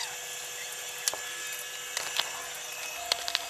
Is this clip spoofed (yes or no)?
no